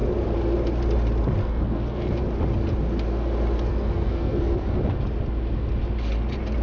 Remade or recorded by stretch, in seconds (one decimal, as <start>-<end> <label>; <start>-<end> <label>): 0.0-1.4 recorded; 1.4-2.2 remade; 2.2-3.7 recorded; 3.7-4.8 remade; 4.8-6.6 recorded